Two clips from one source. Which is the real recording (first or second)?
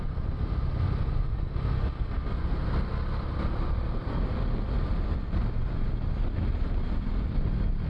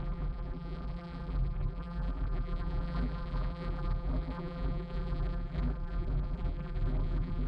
first